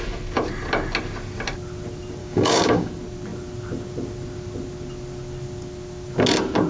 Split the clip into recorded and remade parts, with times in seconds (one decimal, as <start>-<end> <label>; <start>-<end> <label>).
0.0-2.2 recorded; 2.2-2.9 remade; 2.9-6.7 recorded